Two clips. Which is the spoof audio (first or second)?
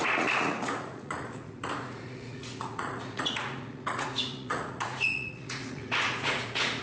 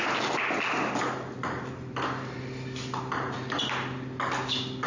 first